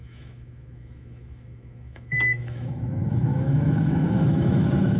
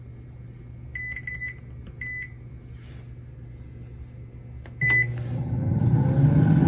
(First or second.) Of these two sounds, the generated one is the first